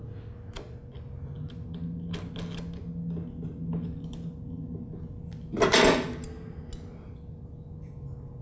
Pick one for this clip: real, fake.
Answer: real